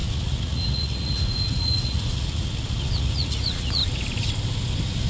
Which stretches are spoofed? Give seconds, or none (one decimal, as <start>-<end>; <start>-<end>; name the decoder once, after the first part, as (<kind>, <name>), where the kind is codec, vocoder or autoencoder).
0.0-3.8 (vocoder, Vocos)